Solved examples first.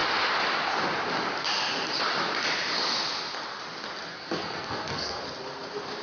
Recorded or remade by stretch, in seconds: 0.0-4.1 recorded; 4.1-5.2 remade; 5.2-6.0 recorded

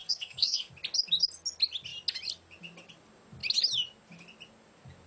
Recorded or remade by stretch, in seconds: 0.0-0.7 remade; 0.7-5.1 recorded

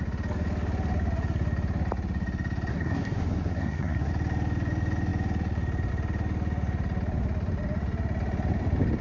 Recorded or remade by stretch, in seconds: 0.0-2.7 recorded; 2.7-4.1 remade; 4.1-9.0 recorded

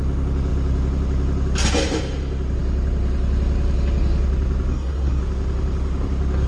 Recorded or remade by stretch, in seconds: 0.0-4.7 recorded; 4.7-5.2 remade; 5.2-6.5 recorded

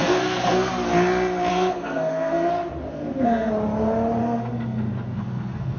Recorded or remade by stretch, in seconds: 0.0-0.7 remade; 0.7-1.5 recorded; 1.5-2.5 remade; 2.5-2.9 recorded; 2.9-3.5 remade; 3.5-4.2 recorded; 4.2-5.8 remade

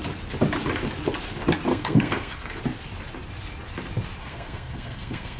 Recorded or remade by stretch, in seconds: 0.0-1.7 recorded; 1.7-2.6 remade; 2.6-4.2 recorded; 4.2-5.4 remade

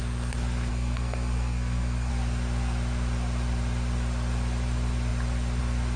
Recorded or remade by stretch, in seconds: 0.0-0.7 recorded; 0.7-2.1 remade; 2.1-6.0 recorded

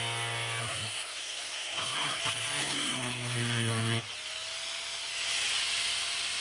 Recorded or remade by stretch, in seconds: 0.0-0.6 recorded; 0.6-2.2 remade; 2.2-2.6 recorded; 2.6-4.0 remade; 4.0-6.4 recorded